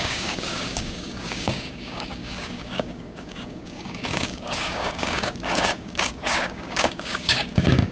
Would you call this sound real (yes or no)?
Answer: no